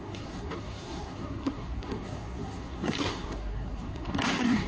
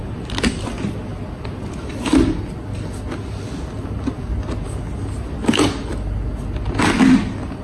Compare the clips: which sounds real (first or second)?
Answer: second